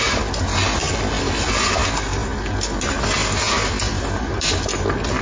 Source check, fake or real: real